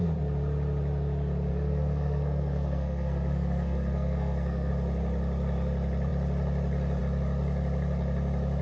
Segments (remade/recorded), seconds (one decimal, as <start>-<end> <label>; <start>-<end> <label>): 0.0-1.5 recorded; 1.5-4.7 remade; 4.7-8.6 recorded